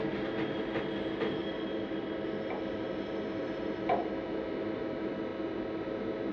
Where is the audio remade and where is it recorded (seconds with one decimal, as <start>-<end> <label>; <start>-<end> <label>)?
0.0-6.3 recorded